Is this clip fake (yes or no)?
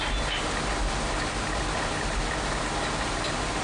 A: no